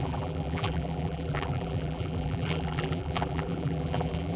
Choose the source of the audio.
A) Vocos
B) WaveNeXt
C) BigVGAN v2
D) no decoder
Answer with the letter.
C